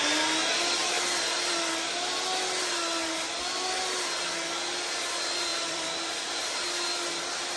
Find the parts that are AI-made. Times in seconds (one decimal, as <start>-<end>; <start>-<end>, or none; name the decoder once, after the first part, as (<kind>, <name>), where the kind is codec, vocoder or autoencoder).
5.5-6.7 (vocoder, BigVGAN v2)